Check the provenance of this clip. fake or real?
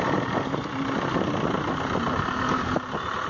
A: real